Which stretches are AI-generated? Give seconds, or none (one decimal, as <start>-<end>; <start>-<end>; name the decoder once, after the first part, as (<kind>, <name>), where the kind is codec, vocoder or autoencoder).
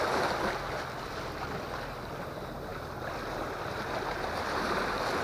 none